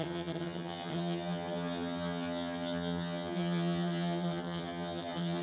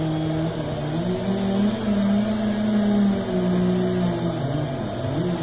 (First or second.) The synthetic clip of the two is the first